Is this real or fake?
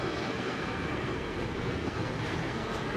fake